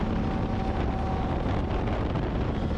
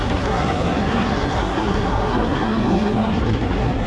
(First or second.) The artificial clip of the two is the second